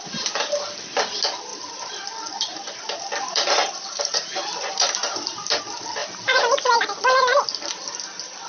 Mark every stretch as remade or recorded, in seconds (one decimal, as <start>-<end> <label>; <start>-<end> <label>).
0.0-1.5 recorded; 1.5-5.6 remade; 5.6-6.0 recorded; 6.0-6.8 remade; 6.8-8.5 recorded